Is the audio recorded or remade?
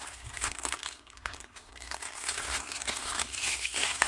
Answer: remade